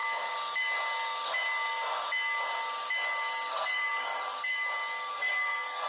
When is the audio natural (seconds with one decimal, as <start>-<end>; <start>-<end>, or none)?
0.0-3.5; 4.5-5.1